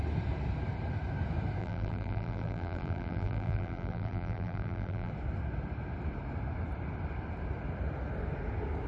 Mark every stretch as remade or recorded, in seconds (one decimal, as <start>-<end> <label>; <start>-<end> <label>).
0.0-1.6 recorded; 1.6-5.1 remade; 5.1-8.9 recorded